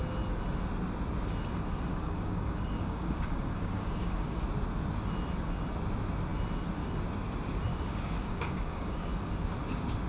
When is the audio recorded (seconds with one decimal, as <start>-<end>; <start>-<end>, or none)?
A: 0.0-1.9; 4.4-7.7; 9.1-10.1

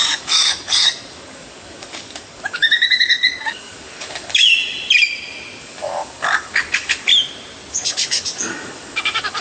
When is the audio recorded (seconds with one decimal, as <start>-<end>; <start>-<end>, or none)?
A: 4.5-5.6; 7.1-7.7

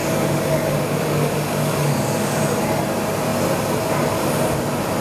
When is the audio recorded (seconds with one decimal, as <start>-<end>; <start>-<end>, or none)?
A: 2.4-5.0

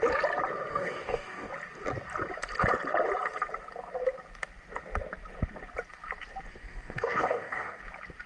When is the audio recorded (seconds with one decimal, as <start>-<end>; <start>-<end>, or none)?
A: 0.0-0.7; 1.5-6.5; 7.8-8.3

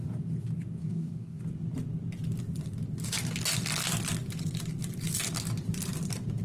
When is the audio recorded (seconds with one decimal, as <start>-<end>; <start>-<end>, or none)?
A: 0.0-0.8; 1.4-6.4

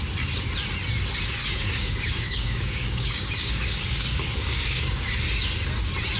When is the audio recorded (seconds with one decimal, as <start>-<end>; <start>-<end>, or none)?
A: 0.0-1.4; 5.1-6.2

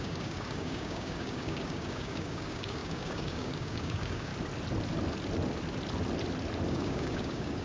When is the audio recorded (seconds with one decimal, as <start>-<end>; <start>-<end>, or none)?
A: 4.3-6.7

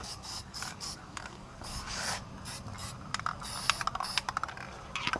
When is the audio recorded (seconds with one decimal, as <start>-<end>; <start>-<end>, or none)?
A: 2.2-5.2